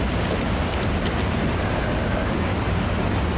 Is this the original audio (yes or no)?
yes